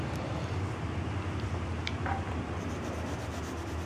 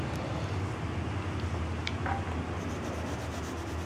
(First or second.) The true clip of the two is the second